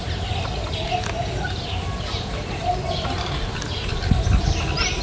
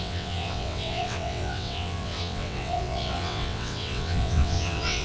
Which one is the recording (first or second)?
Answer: first